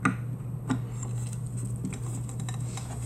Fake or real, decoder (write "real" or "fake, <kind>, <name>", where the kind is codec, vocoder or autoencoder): real